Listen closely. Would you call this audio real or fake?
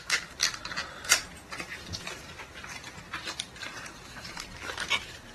fake